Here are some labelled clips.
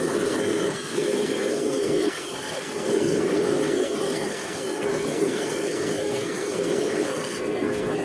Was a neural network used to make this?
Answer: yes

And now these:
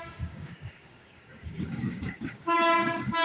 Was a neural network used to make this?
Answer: yes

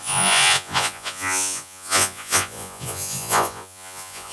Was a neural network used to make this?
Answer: yes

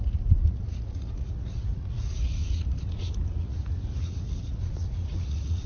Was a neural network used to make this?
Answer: yes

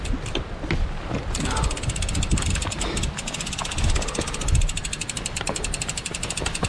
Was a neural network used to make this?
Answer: no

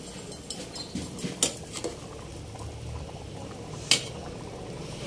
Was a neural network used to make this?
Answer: no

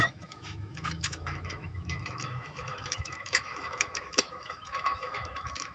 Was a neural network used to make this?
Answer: yes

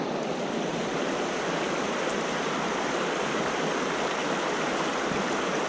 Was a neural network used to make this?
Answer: yes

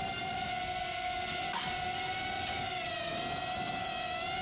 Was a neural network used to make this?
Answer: no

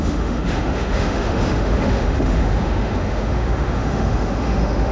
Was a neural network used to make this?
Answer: yes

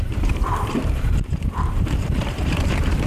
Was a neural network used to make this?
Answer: yes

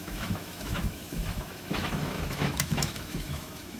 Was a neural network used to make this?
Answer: yes